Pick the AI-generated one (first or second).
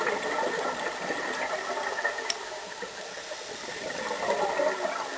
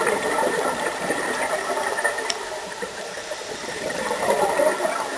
second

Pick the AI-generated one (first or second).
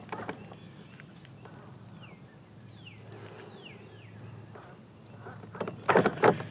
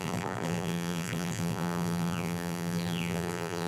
second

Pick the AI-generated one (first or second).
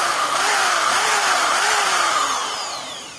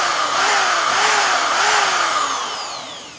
first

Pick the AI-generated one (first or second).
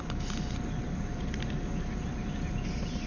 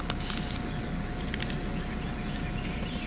first